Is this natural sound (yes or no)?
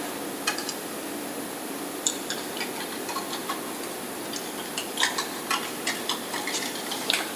no